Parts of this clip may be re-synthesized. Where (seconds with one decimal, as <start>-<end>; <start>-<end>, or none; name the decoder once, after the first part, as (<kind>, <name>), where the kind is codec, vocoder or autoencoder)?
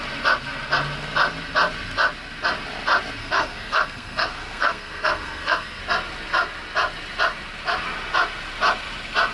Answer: 3.2-5.8 (codec, SNAC)